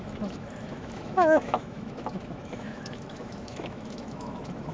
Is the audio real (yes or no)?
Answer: no